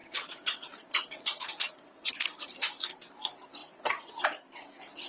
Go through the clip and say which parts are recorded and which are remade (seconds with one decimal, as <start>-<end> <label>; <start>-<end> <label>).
0.0-2.1 remade; 2.1-3.6 recorded; 3.6-4.2 remade; 4.2-5.1 recorded